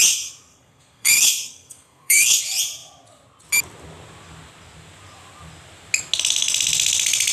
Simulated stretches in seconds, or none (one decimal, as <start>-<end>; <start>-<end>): 0.5-2.4